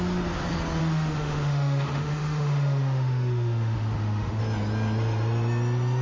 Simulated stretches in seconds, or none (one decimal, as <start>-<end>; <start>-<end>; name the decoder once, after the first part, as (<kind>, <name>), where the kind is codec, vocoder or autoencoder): 0.8-4.4 (autoencoder, DAC-VAE)